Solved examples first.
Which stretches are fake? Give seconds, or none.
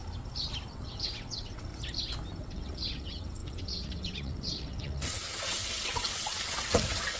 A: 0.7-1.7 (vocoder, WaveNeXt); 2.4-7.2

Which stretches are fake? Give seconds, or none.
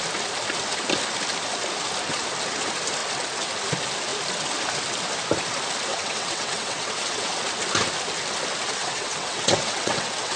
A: 5.9-7.4 (vocoder, WaveNeXt); 8.8-10.4